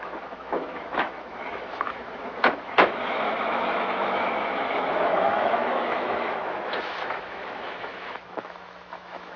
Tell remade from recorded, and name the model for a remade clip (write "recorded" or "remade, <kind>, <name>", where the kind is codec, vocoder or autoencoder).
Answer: remade, autoencoder, DAC-VAE